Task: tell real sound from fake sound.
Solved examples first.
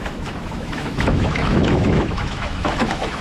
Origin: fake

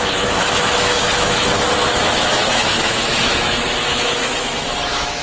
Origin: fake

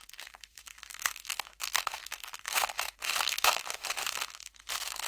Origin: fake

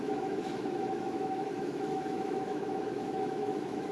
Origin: fake